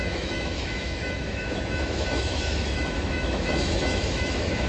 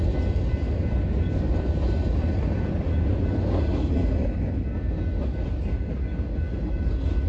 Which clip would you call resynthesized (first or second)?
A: first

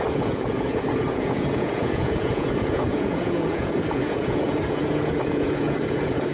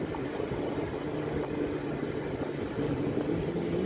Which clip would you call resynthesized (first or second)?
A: first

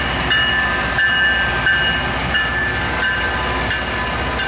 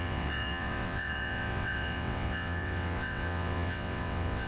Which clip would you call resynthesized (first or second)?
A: second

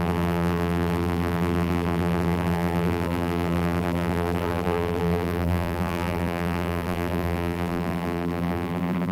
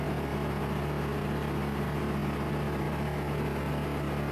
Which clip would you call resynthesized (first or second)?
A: first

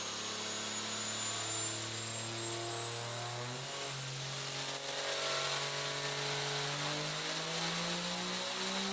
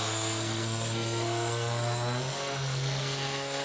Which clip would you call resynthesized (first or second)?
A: second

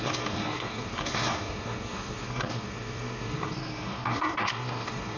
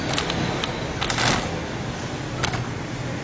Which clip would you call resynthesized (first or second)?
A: first